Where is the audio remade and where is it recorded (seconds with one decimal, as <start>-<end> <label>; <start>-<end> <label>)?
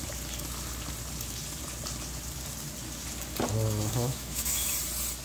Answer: 0.0-3.9 recorded; 3.9-4.7 remade; 4.7-5.2 recorded